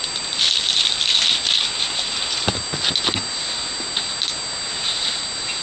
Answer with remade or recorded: recorded